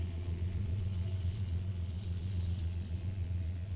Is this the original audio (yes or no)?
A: no